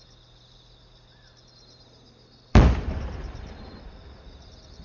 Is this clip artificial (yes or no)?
yes